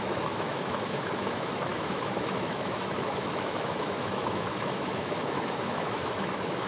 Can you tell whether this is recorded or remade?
remade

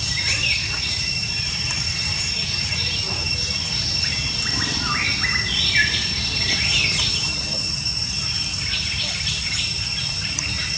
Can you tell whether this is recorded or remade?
recorded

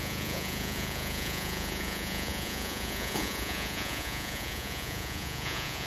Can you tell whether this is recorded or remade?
remade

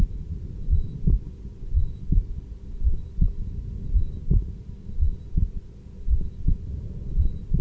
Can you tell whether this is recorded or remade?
recorded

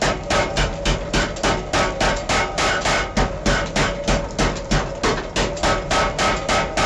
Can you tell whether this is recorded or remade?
recorded